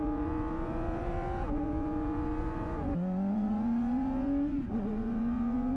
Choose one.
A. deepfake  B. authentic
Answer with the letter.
A